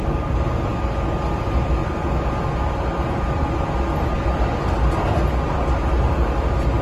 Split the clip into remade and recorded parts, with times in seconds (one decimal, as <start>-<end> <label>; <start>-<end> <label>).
0.0-6.8 recorded